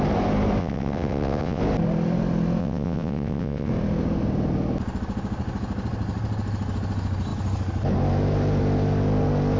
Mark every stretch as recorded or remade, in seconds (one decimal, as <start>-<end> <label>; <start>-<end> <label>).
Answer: 0.0-0.6 recorded; 0.6-1.6 remade; 1.6-2.6 recorded; 2.6-3.7 remade; 3.7-9.6 recorded